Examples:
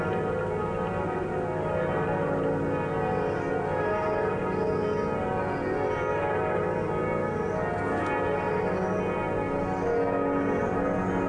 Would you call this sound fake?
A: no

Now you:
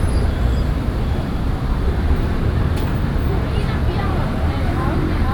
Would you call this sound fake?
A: yes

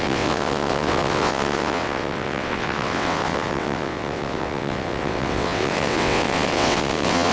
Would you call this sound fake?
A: yes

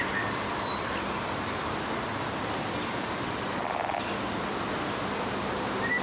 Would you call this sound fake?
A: no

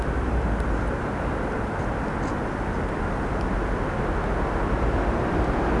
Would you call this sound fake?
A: no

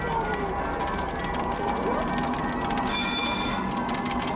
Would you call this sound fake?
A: no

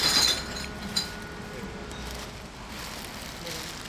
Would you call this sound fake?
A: no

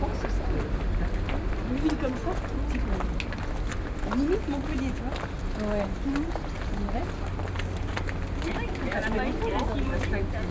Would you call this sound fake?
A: no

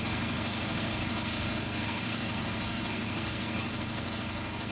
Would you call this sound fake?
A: yes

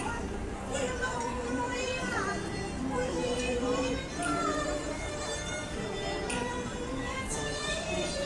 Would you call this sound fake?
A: yes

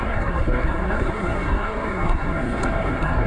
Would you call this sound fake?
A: yes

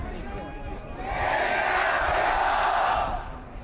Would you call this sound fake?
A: no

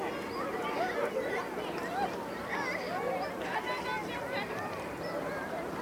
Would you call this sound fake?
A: no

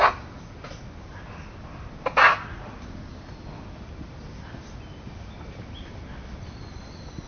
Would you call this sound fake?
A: no